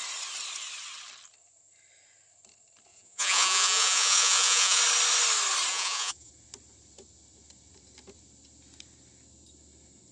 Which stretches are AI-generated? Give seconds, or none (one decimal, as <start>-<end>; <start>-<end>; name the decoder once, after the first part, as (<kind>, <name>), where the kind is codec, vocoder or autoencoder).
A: 2.9-4.8 (vocoder, Vocos); 5.7-6.3